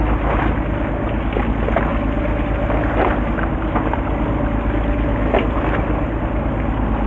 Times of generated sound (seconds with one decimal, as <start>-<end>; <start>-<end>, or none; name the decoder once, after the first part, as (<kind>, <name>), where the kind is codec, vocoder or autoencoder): none

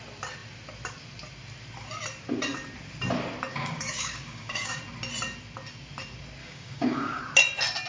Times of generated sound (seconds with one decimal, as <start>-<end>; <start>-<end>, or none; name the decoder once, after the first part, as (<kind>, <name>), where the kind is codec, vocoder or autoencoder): 3.5-4.8 (codec, DAC); 6.4-7.2